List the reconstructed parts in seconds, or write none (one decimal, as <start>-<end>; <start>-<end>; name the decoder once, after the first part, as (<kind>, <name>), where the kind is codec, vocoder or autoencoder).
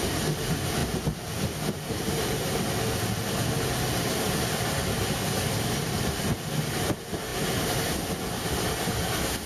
none